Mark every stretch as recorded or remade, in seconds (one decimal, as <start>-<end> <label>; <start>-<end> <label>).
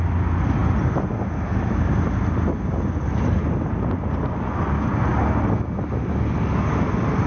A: 0.0-7.3 recorded